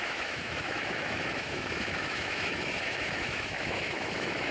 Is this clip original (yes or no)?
no